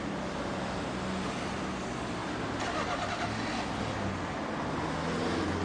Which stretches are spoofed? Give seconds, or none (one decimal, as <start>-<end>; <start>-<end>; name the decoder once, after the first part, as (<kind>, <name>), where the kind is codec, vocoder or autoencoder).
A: none

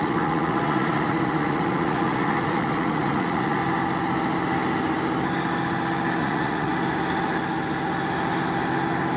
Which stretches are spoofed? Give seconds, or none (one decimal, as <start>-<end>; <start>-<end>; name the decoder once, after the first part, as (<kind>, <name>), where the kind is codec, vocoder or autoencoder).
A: 0.0-3.6 (vocoder, Vocos); 6.2-6.7